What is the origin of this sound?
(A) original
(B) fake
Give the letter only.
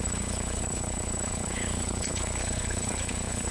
B